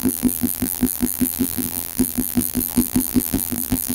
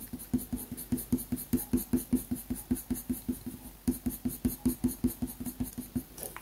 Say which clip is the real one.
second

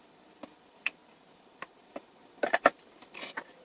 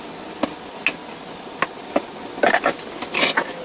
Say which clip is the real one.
second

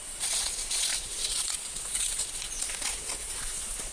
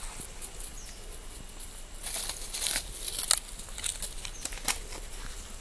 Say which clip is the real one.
second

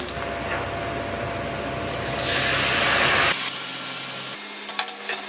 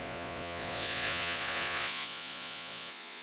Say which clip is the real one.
first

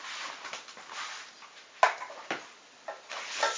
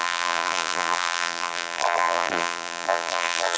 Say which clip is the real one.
first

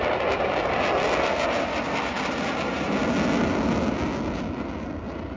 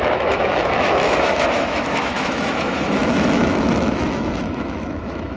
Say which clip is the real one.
first